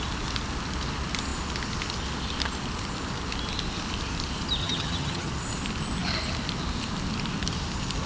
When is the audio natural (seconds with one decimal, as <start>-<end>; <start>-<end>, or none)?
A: 0.0-4.6; 5.3-8.1